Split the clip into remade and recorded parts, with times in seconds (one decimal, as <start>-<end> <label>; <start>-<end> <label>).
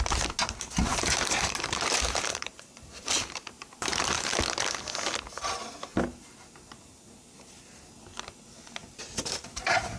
0.0-0.9 recorded; 0.9-4.0 remade; 4.0-8.8 recorded; 8.8-10.0 remade